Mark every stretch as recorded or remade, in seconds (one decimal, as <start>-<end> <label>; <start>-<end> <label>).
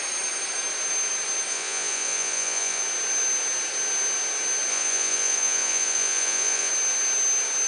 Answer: 0.0-1.5 recorded; 1.5-2.8 remade; 2.8-4.7 recorded; 4.7-6.7 remade; 6.7-7.7 recorded